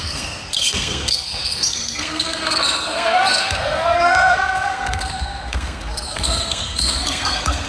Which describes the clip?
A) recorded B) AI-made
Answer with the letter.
B